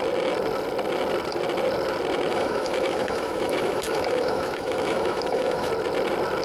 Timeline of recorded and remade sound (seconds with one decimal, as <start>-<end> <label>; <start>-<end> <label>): 0.0-2.3 recorded; 2.3-5.7 remade; 5.7-6.4 recorded